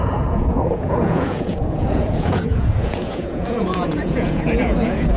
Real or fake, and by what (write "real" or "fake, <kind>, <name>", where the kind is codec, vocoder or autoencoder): fake, vocoder, Vocos